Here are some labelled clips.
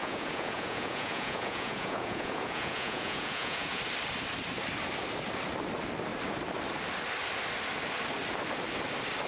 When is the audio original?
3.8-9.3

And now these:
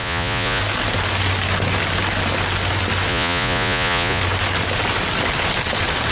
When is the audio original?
0.6-3.1; 4.2-6.1

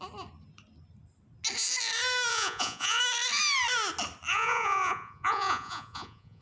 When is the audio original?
0.0-2.3; 3.0-4.3

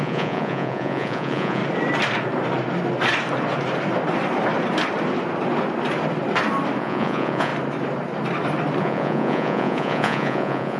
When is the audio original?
1.6-6.8; 7.5-8.8